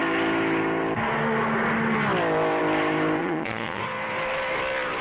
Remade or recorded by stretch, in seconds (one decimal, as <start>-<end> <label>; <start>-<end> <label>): 0.0-3.2 recorded; 3.2-3.8 remade; 3.8-5.0 recorded

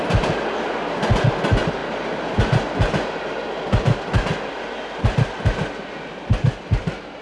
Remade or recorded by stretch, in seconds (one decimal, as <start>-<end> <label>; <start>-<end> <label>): 0.0-7.2 recorded